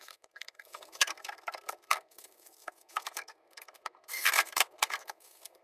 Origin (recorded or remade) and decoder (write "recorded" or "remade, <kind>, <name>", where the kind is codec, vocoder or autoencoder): remade, codec, SNAC